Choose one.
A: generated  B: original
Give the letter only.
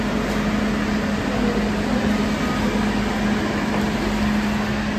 B